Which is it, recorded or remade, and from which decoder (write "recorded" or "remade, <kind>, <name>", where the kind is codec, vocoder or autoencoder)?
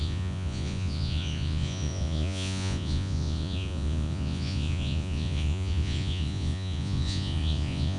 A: remade, vocoder, Vocos